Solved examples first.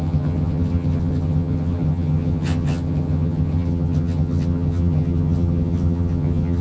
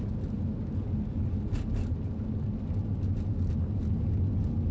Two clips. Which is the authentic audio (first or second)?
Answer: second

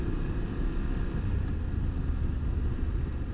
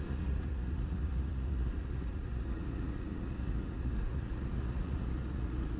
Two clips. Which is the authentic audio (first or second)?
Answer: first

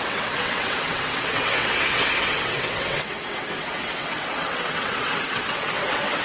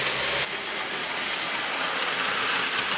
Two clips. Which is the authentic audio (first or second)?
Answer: second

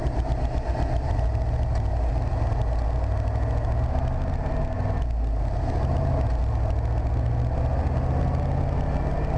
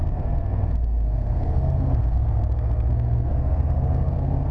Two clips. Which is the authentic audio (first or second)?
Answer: first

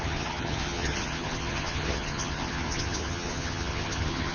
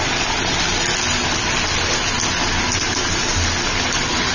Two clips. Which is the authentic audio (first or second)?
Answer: second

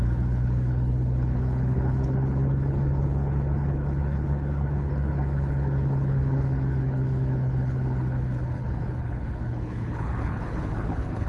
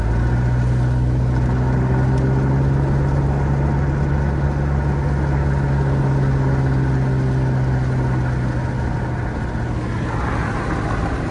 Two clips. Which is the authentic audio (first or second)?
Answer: second